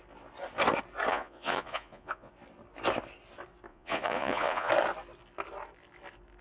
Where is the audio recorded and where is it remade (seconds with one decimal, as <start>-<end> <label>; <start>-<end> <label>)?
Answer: 0.0-1.1 recorded; 1.1-2.3 remade; 2.3-3.7 recorded; 3.7-4.7 remade; 4.7-6.4 recorded